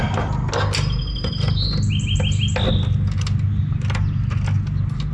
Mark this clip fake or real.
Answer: real